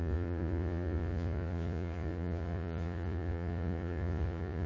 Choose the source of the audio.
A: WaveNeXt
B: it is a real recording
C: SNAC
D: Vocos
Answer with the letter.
D